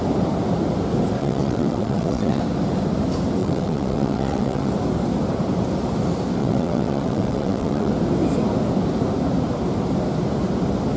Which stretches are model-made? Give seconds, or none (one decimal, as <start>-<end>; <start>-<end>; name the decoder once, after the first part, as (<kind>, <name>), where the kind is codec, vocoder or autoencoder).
1.2-2.4 (vocoder, WaveNeXt); 3.4-4.7; 6.4-7.9

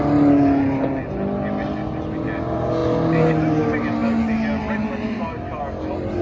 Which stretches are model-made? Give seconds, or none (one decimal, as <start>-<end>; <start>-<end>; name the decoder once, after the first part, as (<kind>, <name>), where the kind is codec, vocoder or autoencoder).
none

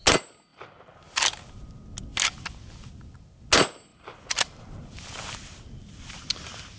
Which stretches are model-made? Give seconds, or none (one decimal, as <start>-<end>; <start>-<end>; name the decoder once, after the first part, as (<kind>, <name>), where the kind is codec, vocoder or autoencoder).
none

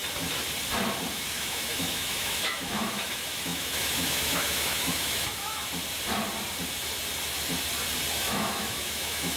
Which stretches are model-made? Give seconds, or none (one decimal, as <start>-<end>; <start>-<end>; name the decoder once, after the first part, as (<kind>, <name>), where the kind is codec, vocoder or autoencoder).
1.1-5.6 (autoencoder, DAC-VAE); 8.1-9.4

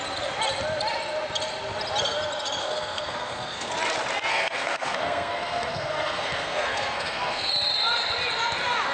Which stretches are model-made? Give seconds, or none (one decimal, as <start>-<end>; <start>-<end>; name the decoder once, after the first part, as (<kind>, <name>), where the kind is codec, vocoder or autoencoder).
2.6-3.7 (codec, SNAC); 4.3-7.5